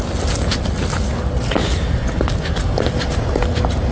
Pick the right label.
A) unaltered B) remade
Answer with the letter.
A